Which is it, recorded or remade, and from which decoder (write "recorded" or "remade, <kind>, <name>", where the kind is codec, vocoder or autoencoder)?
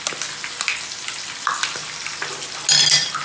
recorded